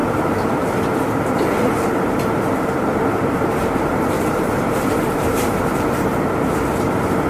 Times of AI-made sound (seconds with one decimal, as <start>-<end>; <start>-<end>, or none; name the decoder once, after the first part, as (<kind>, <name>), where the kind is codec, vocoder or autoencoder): 0.0-1.0 (vocoder, BigVGAN v2); 2.9-6.5

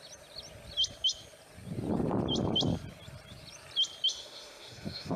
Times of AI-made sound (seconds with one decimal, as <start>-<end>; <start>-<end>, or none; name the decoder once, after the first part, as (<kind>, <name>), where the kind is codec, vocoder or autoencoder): 4.1-5.2 (autoencoder, DAC-VAE)

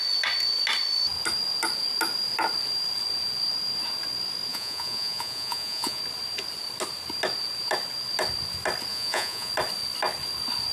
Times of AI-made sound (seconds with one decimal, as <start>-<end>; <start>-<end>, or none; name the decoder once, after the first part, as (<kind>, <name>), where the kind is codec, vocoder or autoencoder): 4.5-6.0 (vocoder, Vocos); 8.9-9.5

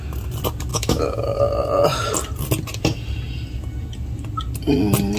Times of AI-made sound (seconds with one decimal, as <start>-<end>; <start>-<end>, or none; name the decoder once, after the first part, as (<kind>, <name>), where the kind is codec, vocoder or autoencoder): 0.7-1.4 (autoencoder, DAC-VAE)